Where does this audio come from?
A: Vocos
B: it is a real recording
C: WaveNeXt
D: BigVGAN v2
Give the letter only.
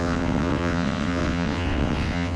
C